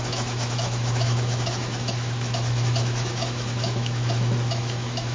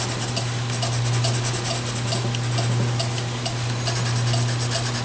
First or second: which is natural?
second